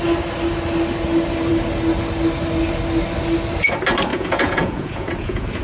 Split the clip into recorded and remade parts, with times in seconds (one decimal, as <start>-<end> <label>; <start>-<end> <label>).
0.0-4.1 recorded; 4.1-5.6 remade